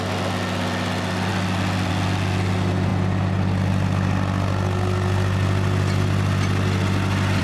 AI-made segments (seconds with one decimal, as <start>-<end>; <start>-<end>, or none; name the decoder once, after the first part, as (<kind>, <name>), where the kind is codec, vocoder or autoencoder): none